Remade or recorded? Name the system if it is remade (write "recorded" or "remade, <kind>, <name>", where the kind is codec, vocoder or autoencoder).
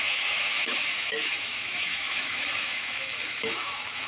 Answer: remade, autoencoder, DAC-VAE